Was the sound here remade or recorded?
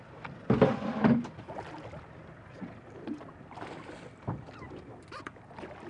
recorded